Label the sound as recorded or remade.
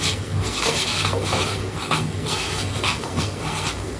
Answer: remade